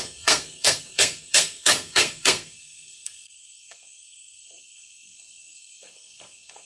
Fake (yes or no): yes